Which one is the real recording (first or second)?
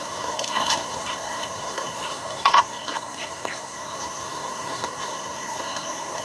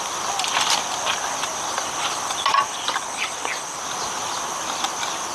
second